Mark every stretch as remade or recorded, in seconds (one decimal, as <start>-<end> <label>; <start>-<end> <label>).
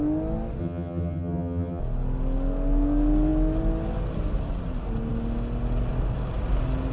0.0-0.6 recorded; 0.6-1.8 remade; 1.8-6.9 recorded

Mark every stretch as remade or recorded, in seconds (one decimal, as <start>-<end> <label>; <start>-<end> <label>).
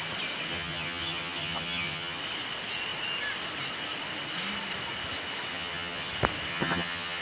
0.0-0.5 recorded; 0.5-2.2 remade; 2.2-5.5 recorded; 5.5-6.1 remade; 6.1-6.5 recorded; 6.5-7.2 remade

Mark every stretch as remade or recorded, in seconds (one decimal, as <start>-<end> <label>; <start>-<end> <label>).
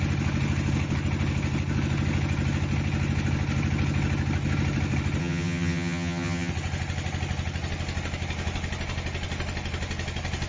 0.0-5.2 recorded; 5.2-6.5 remade; 6.5-10.5 recorded